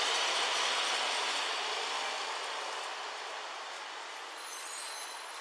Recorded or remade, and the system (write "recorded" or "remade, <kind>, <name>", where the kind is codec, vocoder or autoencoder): recorded